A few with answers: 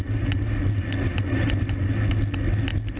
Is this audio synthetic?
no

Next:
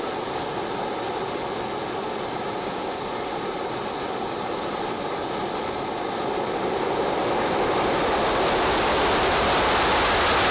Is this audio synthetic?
no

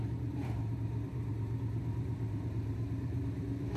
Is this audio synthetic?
yes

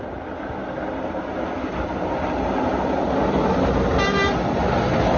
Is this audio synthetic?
no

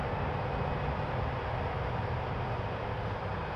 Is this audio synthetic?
no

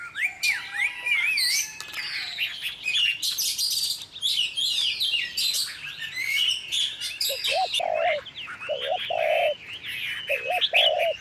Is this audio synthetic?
no